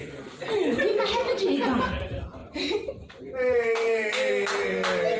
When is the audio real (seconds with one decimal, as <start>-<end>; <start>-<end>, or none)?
0.8-2.4; 4.3-5.2